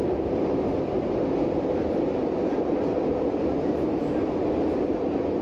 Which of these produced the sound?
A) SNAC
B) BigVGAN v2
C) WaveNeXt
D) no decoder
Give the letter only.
D